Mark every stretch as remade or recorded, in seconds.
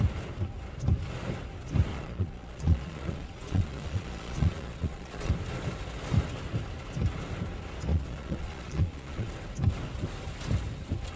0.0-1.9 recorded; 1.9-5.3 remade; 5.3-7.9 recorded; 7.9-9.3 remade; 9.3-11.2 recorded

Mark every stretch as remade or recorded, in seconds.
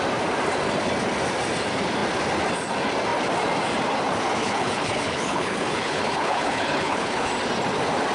0.0-4.4 recorded; 4.4-7.3 remade; 7.3-8.1 recorded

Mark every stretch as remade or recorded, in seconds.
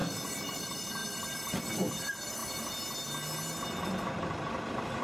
0.0-0.6 recorded; 0.6-2.4 remade; 2.4-3.8 recorded; 3.8-5.0 remade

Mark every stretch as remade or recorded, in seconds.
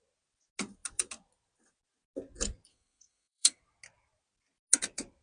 0.0-2.7 recorded; 2.7-3.6 remade; 3.6-5.2 recorded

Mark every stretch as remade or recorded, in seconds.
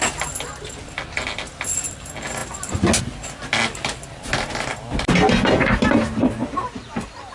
0.0-7.3 recorded